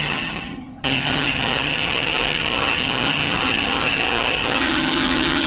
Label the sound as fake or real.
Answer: fake